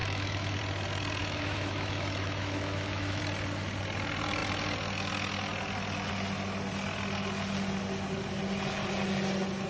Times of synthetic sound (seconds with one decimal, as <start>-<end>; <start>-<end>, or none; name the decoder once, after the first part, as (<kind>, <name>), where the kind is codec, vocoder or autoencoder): 0.0-0.6 (autoencoder, DAC-VAE); 1.2-3.2